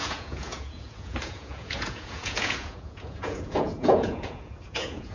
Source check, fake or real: fake